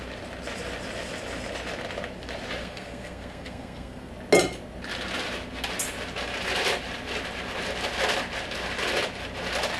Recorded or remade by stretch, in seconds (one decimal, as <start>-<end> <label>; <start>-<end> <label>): 0.0-2.6 recorded; 2.6-4.1 remade; 4.1-9.8 recorded